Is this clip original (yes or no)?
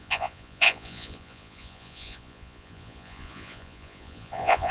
no